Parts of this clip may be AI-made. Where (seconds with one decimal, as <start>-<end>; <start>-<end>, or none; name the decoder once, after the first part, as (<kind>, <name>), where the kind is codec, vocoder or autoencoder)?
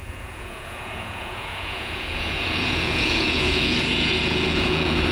0.0-5.1 (vocoder, Vocos)